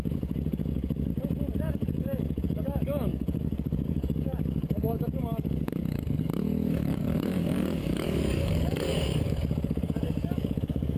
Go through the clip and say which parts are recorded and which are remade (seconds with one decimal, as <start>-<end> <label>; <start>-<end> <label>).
0.0-1.1 remade; 1.1-1.6 recorded; 1.6-11.0 remade